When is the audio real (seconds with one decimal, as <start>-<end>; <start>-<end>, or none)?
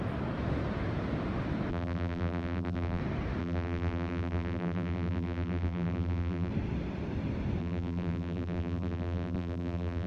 0.0-1.7; 3.0-3.4; 6.5-7.6